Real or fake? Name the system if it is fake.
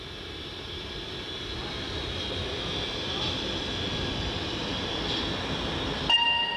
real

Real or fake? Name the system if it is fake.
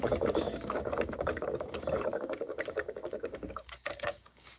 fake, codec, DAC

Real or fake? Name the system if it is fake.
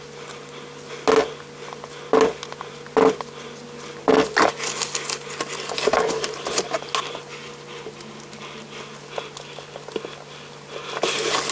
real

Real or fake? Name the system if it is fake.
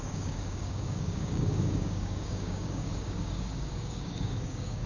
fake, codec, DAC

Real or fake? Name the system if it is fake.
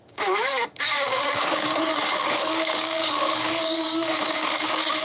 fake, codec, DAC